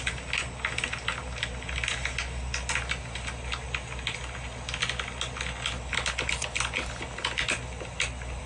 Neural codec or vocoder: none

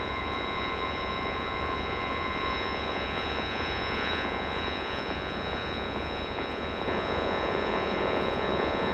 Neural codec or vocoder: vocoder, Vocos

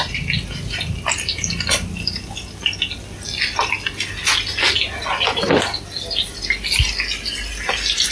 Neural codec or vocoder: none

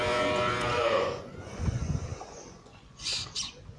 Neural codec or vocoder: vocoder, Vocos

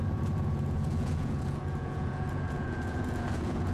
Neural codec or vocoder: vocoder, Vocos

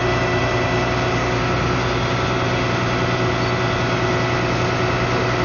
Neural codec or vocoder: none